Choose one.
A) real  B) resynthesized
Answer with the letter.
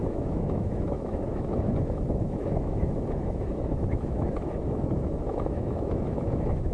B